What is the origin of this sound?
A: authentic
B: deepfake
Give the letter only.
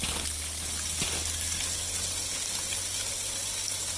A